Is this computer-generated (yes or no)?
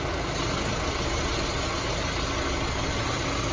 no